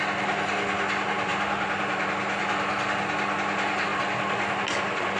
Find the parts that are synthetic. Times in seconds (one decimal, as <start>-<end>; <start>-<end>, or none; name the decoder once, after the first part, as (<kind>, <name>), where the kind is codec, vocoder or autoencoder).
none